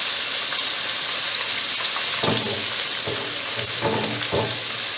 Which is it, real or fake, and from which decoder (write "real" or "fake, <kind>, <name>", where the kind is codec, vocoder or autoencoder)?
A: real